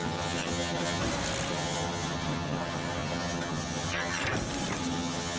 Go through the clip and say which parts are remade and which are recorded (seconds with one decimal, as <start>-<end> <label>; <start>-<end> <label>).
0.0-1.0 remade; 1.0-1.5 recorded; 1.5-4.2 remade; 4.2-4.8 recorded; 4.8-5.4 remade